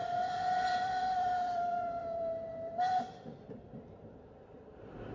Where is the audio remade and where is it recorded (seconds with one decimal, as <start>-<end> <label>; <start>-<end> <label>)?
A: 0.0-5.1 remade